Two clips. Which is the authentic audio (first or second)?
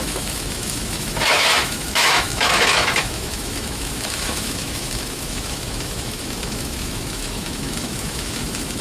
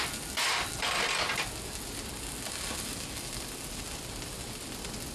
second